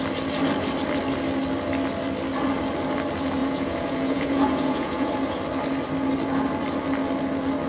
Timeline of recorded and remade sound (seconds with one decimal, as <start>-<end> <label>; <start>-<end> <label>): 0.0-3.4 recorded; 3.4-5.1 remade; 5.1-7.7 recorded